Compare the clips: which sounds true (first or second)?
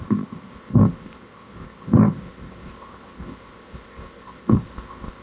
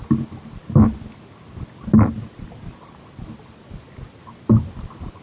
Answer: second